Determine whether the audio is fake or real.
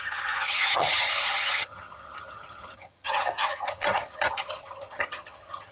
fake